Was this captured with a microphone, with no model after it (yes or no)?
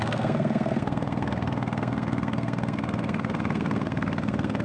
no